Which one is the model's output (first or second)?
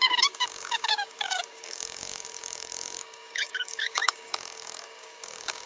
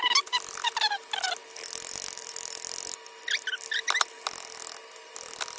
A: first